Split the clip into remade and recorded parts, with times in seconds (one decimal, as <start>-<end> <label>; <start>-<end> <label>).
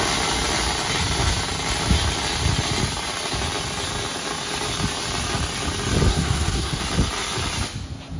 0.0-6.1 recorded; 6.1-6.8 remade; 6.8-8.2 recorded